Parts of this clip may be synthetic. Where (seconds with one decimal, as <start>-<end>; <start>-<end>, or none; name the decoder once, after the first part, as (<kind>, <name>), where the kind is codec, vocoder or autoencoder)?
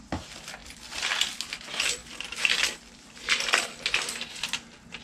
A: none